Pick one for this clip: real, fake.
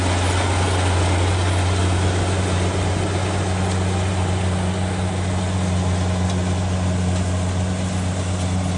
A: real